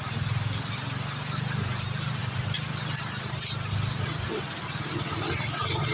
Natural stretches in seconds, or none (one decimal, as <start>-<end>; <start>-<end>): 0.0-5.9